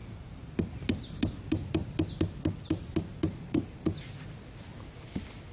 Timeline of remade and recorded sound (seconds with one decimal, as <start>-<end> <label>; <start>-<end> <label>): 0.0-5.5 recorded